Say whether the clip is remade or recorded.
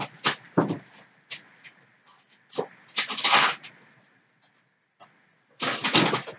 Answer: recorded